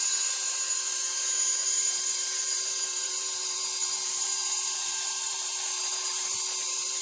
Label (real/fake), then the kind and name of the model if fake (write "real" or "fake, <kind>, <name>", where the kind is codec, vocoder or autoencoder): fake, vocoder, BigVGAN v2